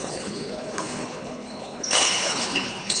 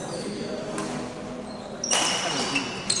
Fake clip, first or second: first